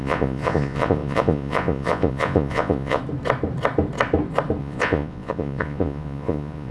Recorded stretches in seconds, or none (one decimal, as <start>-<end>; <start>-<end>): 3.0-4.6